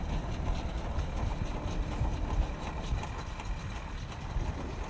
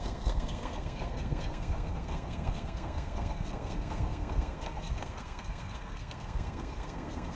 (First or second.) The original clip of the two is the first